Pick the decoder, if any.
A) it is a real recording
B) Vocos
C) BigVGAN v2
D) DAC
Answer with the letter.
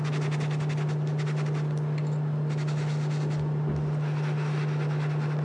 A